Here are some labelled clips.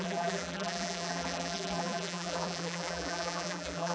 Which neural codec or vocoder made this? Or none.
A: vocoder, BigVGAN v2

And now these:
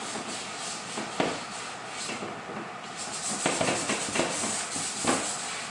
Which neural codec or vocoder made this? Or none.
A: none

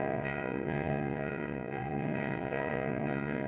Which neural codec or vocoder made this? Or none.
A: vocoder, WaveNeXt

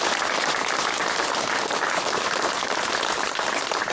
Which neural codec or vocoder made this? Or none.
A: vocoder, BigVGAN v2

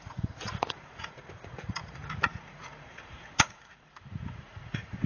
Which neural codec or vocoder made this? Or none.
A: vocoder, Vocos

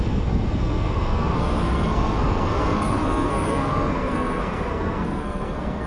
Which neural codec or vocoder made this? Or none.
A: codec, SNAC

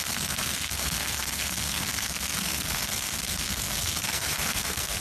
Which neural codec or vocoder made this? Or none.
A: codec, SNAC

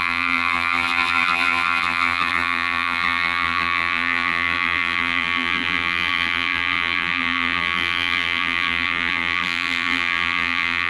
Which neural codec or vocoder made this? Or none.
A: vocoder, BigVGAN v2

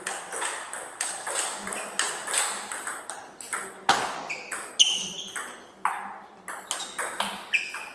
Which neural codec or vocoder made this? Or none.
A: none